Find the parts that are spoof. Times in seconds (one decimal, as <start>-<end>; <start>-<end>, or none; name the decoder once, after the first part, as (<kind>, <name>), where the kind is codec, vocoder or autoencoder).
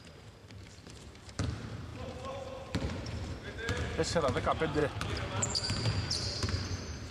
0.0-4.8 (vocoder, BigVGAN v2); 5.4-7.1